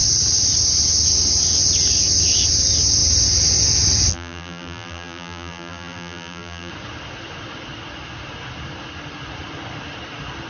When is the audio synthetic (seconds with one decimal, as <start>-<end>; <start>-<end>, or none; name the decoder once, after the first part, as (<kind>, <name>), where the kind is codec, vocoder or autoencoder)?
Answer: 4.1-6.7 (vocoder, BigVGAN v2)